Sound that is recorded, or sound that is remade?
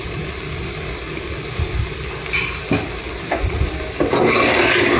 recorded